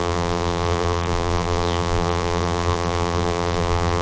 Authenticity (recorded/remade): remade